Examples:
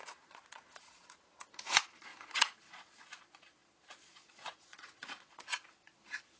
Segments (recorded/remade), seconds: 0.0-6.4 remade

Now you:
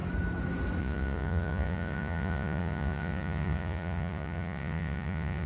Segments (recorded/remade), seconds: 0.0-0.8 recorded; 0.8-5.5 remade

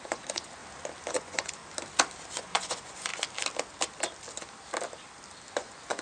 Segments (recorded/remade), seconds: 0.0-0.6 remade; 0.6-1.1 recorded; 1.1-1.6 remade; 1.6-2.3 recorded; 2.3-3.1 remade; 3.1-5.5 recorded; 5.5-6.0 remade

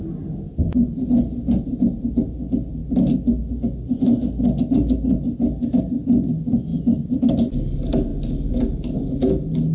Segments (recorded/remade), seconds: 0.0-9.7 recorded

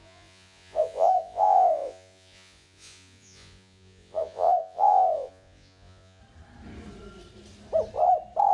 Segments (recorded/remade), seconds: 0.0-6.2 remade; 6.2-8.5 recorded

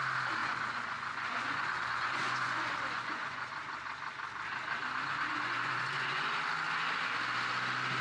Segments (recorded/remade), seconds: 0.0-0.4 recorded; 0.4-3.5 remade; 3.5-5.3 recorded; 5.3-6.3 remade; 6.3-8.0 recorded